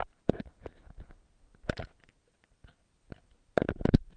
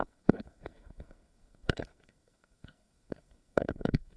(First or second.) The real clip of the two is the first